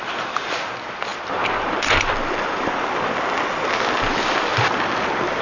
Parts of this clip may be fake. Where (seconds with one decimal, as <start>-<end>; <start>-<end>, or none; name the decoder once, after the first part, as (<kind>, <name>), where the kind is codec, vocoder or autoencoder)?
none